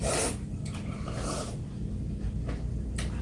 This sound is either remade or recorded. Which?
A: recorded